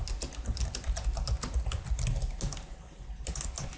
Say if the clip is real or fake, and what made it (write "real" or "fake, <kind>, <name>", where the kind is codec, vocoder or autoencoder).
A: real